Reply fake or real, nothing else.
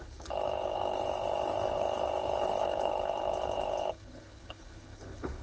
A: fake